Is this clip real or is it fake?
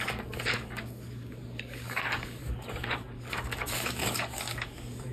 fake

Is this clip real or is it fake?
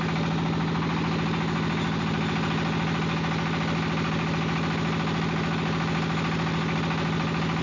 real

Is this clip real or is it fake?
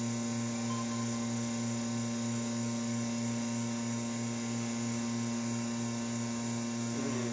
real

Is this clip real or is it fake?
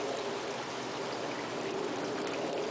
real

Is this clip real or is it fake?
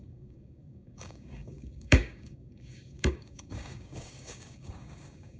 fake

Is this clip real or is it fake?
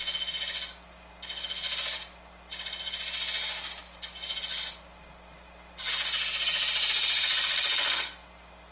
real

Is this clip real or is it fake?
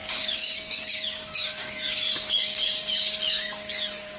fake